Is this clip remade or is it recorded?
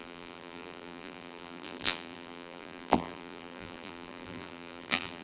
remade